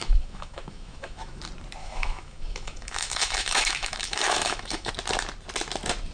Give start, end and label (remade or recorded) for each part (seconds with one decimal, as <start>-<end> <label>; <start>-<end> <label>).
0.0-1.4 remade; 1.4-1.8 recorded; 1.8-4.9 remade; 4.9-6.1 recorded